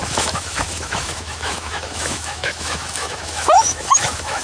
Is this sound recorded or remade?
remade